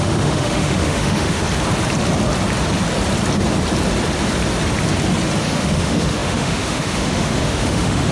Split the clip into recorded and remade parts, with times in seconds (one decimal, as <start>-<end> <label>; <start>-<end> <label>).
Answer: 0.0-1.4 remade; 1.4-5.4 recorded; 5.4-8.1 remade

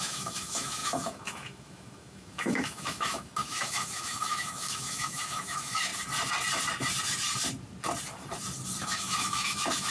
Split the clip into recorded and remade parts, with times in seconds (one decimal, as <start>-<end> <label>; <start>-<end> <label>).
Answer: 0.0-5.9 remade; 5.9-8.8 recorded; 8.8-9.9 remade

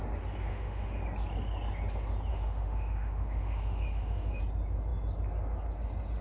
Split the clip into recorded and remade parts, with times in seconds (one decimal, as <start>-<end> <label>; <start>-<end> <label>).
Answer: 0.0-0.5 recorded; 0.5-1.0 remade; 1.0-2.3 recorded; 2.3-4.4 remade; 4.4-6.2 recorded

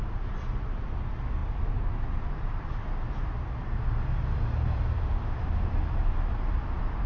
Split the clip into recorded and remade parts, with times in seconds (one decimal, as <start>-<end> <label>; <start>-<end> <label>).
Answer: 0.0-5.0 recorded; 5.0-5.7 remade; 5.7-7.1 recorded

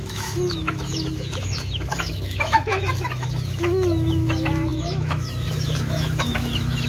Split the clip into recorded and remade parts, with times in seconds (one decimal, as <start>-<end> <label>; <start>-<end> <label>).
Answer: 0.0-6.9 remade

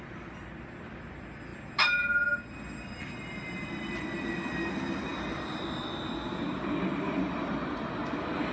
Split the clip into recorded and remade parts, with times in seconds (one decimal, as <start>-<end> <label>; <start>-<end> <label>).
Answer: 0.0-8.5 recorded